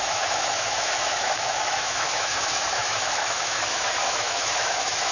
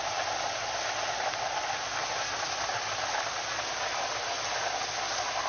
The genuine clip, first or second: second